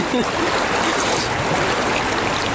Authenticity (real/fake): real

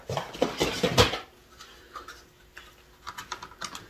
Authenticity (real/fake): real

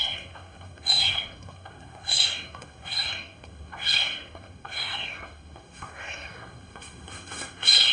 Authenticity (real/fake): fake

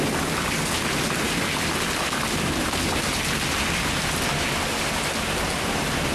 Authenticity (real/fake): real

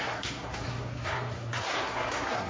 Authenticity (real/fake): fake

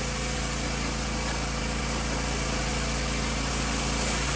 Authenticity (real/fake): real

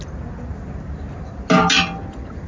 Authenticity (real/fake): real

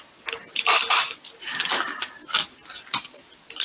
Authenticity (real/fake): real